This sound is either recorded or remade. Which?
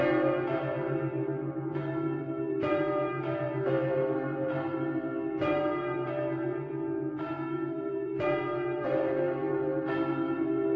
remade